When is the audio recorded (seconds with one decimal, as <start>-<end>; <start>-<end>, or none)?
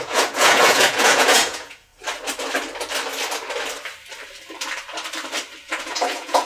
1.9-5.8